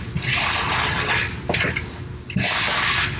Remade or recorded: recorded